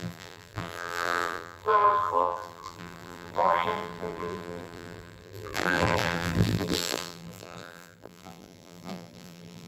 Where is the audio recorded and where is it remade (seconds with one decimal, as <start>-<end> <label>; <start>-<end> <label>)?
0.0-9.7 remade

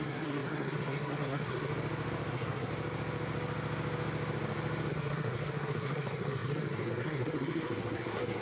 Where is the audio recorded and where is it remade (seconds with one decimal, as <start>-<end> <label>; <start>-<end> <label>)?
0.0-1.7 remade; 1.7-2.3 recorded; 2.3-2.7 remade; 2.7-4.9 recorded; 4.9-8.4 remade

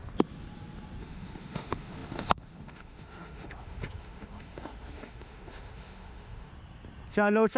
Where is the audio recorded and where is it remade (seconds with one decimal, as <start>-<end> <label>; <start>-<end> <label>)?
0.0-1.0 recorded; 1.0-6.5 remade; 6.5-7.1 recorded; 7.1-7.6 remade

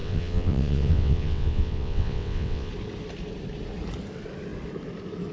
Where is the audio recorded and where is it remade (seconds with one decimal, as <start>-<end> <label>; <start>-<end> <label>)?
0.0-2.7 remade; 2.7-5.3 recorded

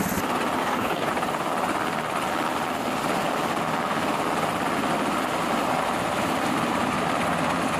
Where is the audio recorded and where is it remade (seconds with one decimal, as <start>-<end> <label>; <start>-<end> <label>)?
0.0-0.6 recorded; 0.6-1.1 remade; 1.1-7.8 recorded

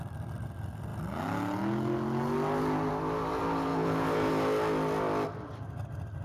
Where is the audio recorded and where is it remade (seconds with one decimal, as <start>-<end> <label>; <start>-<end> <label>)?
0.0-3.7 recorded; 3.7-4.3 remade; 4.3-6.2 recorded